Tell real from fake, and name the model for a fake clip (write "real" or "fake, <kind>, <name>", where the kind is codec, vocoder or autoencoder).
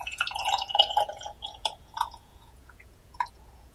fake, vocoder, Vocos